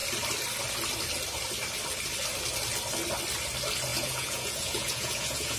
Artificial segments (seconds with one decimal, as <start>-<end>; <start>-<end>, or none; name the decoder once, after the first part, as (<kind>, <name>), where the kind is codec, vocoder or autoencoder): 3.9-5.6 (vocoder, Vocos)